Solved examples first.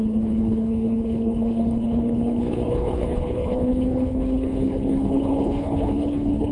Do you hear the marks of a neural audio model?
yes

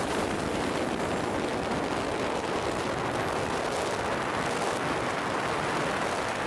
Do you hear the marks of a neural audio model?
no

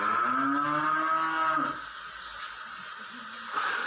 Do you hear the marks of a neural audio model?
no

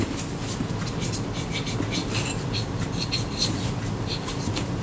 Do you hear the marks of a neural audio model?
no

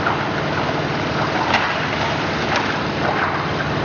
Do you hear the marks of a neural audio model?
no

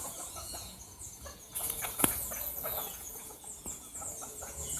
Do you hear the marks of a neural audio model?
yes